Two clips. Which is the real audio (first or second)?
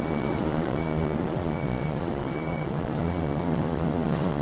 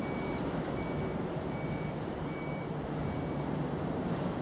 second